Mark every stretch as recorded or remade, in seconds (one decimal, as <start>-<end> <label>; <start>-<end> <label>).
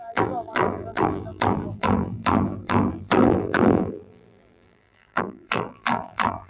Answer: 0.0-6.5 remade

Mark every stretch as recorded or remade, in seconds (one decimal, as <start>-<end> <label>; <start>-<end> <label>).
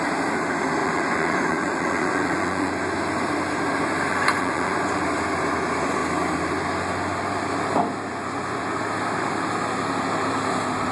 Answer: 0.0-0.8 recorded; 0.8-2.7 remade; 2.7-4.1 recorded; 4.1-5.0 remade; 5.0-8.1 recorded; 8.1-8.8 remade; 8.8-10.9 recorded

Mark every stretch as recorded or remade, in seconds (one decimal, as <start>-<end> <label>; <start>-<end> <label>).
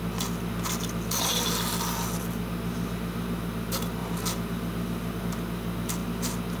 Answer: 0.0-6.6 recorded